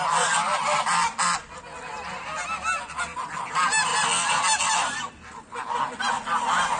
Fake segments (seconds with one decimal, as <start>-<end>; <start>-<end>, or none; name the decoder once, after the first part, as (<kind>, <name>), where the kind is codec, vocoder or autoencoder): none

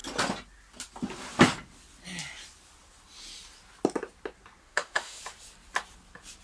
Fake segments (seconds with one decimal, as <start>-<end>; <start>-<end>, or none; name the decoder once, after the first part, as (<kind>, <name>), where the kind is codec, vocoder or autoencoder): 4.6-5.2 (autoencoder, DAC-VAE)

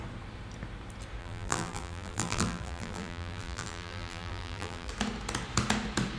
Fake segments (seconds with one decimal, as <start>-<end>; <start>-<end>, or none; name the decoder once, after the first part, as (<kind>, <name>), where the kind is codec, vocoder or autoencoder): 1.2-4.9 (vocoder, BigVGAN v2)